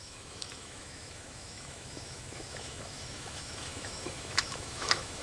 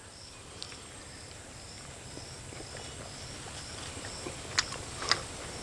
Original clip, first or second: second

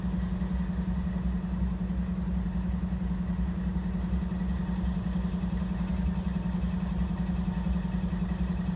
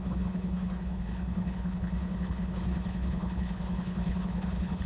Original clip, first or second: first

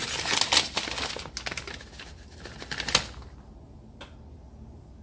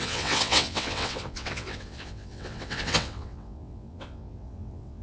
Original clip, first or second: first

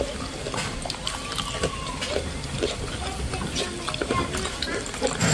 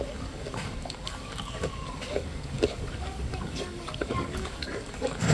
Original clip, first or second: first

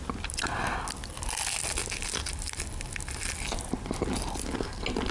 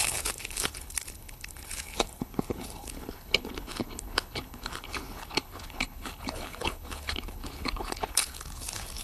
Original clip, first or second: first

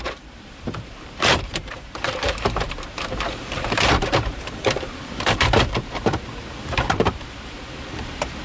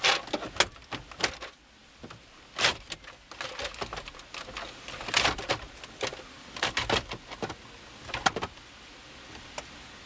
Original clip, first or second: second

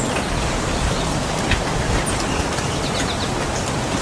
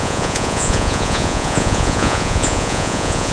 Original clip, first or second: first